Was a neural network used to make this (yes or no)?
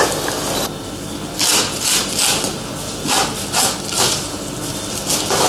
no